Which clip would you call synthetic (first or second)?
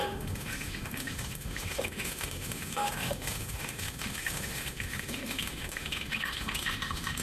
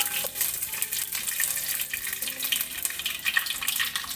first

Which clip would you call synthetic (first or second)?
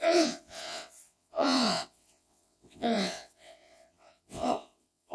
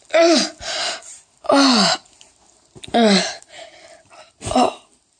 first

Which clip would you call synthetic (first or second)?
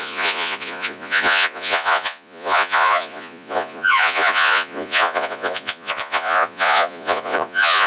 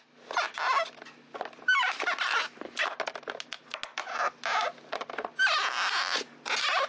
first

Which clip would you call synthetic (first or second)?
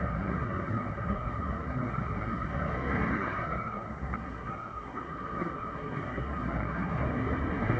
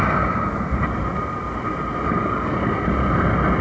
first